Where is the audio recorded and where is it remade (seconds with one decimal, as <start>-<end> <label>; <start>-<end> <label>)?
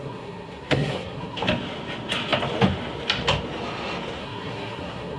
0.0-1.4 remade; 1.4-4.2 recorded; 4.2-5.2 remade